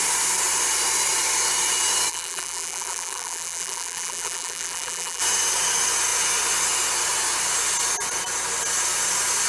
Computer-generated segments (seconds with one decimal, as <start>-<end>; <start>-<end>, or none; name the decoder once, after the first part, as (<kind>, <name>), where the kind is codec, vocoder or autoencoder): 2.1-5.2 (vocoder, BigVGAN v2)